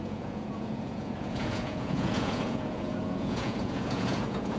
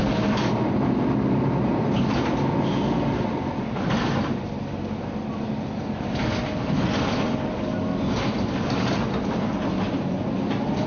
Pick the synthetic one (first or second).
first